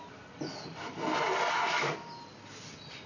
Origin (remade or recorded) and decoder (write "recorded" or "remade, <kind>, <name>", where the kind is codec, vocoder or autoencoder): recorded